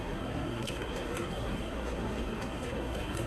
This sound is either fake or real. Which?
fake